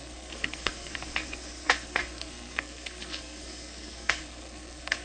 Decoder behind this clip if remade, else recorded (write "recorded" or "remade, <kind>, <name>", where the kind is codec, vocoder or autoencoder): remade, codec, SNAC